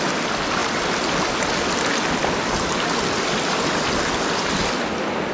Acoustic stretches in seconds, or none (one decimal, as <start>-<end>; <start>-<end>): 0.0-5.3